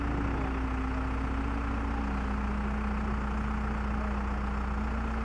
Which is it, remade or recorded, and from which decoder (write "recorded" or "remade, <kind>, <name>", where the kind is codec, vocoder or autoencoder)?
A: recorded